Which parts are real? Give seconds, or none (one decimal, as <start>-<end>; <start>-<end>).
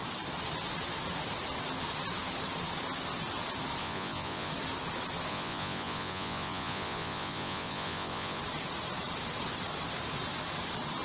0.0-3.8; 4.5-5.3; 8.4-11.0